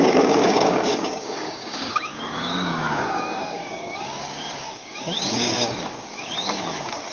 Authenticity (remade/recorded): remade